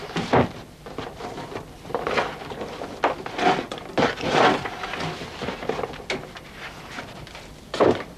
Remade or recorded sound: recorded